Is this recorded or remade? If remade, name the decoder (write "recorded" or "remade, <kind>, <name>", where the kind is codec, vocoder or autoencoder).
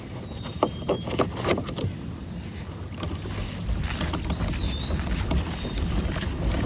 recorded